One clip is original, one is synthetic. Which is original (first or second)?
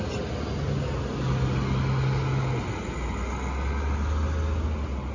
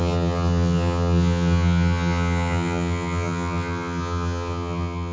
first